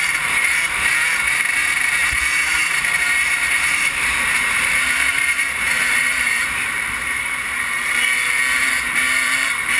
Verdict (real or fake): fake